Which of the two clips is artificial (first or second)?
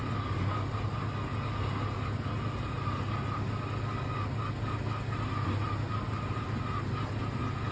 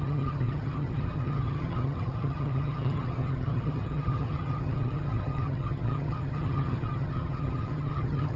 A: second